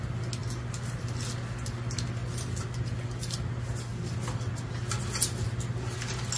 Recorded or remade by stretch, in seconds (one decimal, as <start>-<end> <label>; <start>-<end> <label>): 0.0-2.2 recorded; 2.2-2.8 remade; 2.8-6.4 recorded